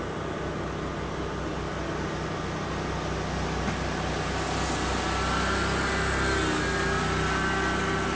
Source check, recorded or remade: recorded